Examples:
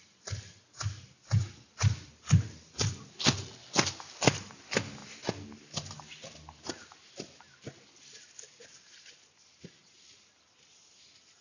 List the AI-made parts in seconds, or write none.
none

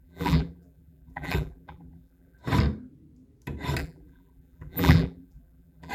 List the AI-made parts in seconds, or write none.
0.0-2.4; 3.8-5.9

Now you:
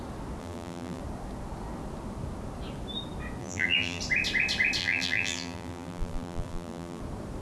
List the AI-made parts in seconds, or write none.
0.4-1.0; 3.4-4.0; 4.8-7.0

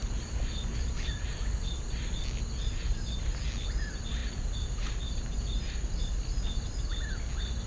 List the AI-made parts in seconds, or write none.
0.0-2.2; 2.6-3.2; 4.2-6.0

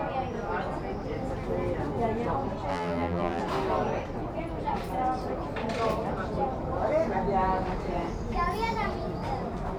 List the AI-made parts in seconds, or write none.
2.7-3.4